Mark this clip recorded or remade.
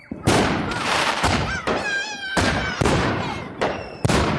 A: remade